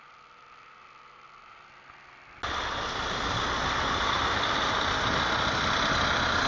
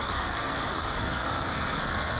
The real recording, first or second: first